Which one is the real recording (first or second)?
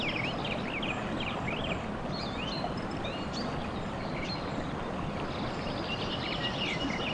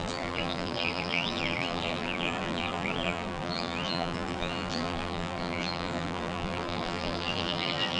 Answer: first